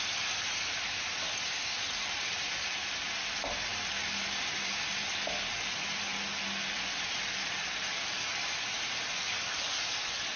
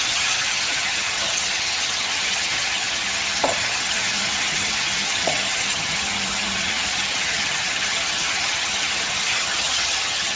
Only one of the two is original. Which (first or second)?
first